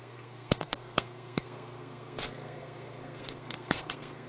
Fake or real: fake